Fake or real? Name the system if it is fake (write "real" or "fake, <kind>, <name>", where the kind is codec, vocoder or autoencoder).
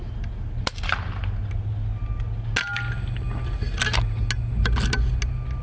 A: real